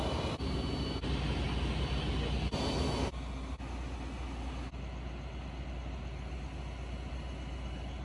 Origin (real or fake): real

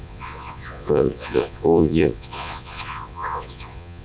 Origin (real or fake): fake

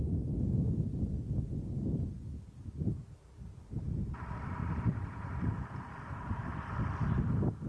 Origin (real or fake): real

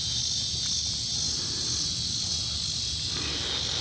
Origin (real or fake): real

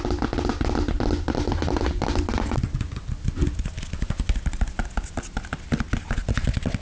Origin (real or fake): real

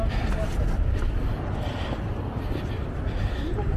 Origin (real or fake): real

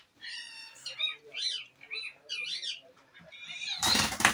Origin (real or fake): fake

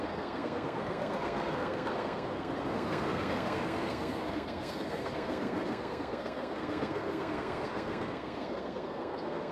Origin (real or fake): fake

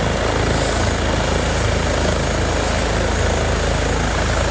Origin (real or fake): real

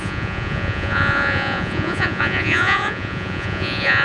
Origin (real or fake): fake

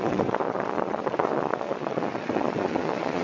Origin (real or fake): fake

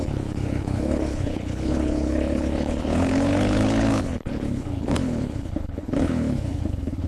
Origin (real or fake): fake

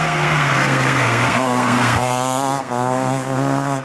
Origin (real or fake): fake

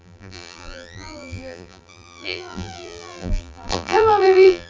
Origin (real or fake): fake